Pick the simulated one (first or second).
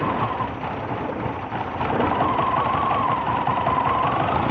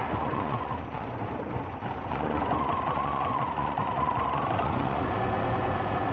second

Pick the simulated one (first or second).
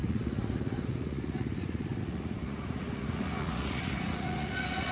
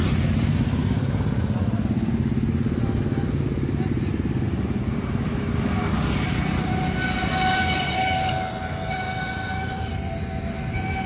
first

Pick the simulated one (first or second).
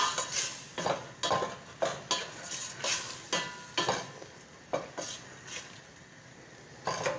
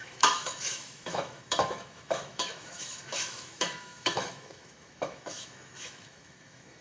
second